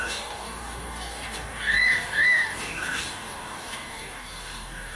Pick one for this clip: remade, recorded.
remade